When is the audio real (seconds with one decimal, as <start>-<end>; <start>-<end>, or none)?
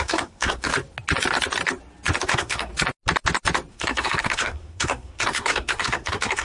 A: 0.7-2.3; 2.7-3.7